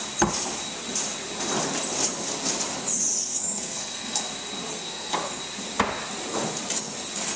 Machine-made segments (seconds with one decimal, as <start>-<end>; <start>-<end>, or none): 3.2-4.3; 4.7-5.4